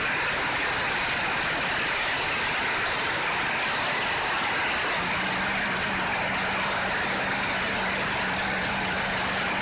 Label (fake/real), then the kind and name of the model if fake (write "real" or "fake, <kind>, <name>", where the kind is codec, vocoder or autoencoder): real